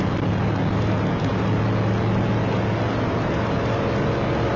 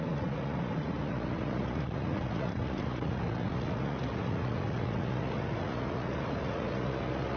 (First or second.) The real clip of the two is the first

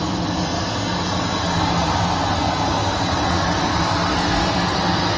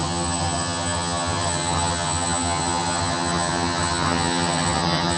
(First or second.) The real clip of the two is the first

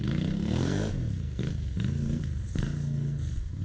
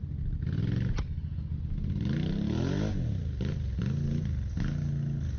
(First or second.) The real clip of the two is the second